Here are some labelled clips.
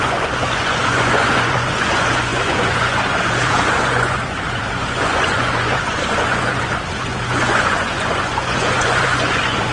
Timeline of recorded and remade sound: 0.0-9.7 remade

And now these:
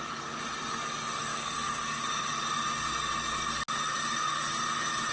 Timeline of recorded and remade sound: 0.0-1.3 recorded; 1.3-2.3 remade; 2.3-5.1 recorded

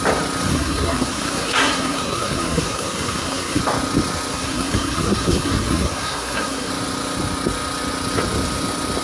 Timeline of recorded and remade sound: 0.0-0.5 recorded; 0.5-3.6 remade; 3.6-4.3 recorded; 4.3-6.7 remade; 6.7-9.0 recorded

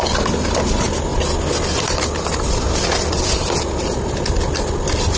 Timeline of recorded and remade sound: 0.0-5.2 recorded

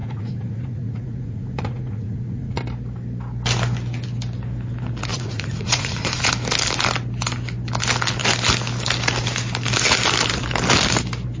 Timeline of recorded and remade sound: 0.0-2.6 remade; 2.6-5.1 recorded; 5.1-6.3 remade; 6.3-11.4 recorded

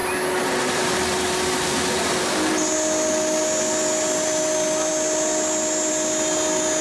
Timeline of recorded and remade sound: 0.0-6.8 recorded

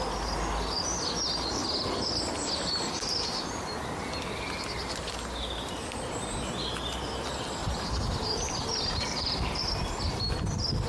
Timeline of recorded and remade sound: 0.0-1.6 recorded; 1.6-3.4 remade; 3.4-7.6 recorded; 7.6-9.6 remade; 9.6-10.9 recorded